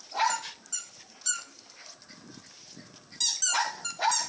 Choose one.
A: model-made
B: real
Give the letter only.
B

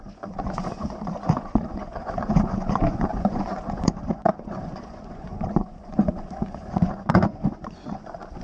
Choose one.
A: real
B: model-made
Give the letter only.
B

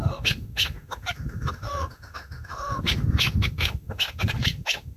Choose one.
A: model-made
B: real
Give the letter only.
A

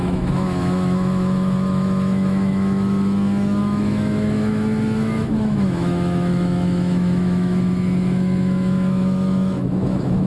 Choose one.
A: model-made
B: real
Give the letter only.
A